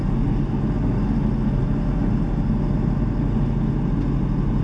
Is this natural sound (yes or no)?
yes